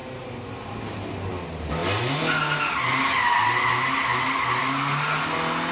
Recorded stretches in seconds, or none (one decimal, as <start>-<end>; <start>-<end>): 0.0-5.7

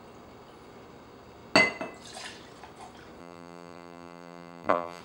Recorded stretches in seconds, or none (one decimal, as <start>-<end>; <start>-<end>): 0.0-3.2

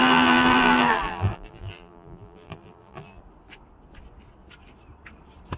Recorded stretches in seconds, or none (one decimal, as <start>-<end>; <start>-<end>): 3.2-5.6

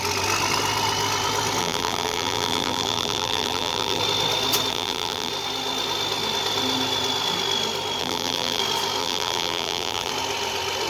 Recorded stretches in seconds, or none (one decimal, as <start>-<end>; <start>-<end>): 0.0-1.6; 4.0-4.7; 5.3-8.0; 8.6-9.0; 10.1-10.9

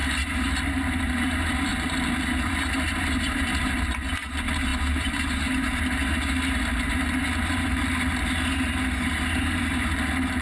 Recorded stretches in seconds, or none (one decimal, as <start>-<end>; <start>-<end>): 1.7-2.4

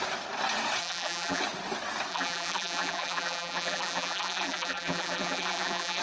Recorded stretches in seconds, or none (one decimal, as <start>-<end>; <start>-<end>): 0.0-0.8; 1.4-2.1

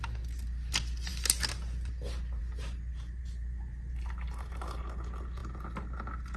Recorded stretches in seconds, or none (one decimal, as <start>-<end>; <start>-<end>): 0.0-2.9; 4.8-6.4

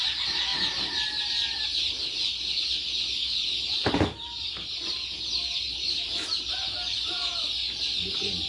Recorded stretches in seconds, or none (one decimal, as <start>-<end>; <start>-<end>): 0.0-0.5; 1.1-3.8; 4.8-8.5